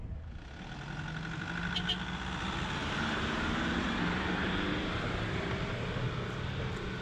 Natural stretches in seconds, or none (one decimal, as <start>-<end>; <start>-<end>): 0.0-2.8; 5.7-7.0